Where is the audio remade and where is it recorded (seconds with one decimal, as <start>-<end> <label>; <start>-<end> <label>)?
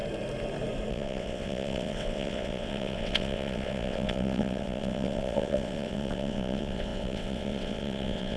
0.0-0.9 recorded; 0.9-8.4 remade